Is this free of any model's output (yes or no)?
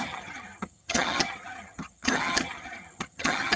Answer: no